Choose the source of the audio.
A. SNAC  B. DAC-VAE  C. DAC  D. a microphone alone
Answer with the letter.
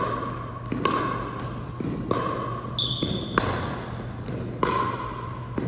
D